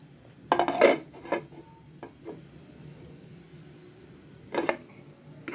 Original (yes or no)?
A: yes